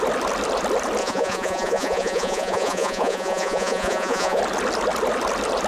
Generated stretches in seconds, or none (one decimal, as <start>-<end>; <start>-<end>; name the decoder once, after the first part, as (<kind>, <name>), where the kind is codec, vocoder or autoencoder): 1.0-4.4 (vocoder, Vocos)